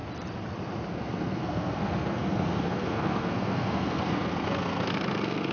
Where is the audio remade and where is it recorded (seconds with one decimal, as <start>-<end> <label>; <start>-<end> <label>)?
0.0-0.9 recorded; 0.9-5.5 remade